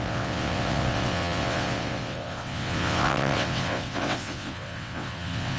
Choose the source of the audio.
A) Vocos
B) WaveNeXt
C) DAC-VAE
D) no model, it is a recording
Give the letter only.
B